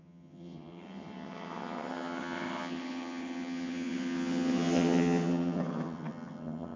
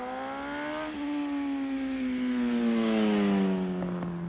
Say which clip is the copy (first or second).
first